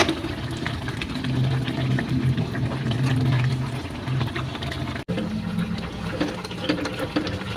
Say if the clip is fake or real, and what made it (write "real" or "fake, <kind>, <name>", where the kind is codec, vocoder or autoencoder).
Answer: real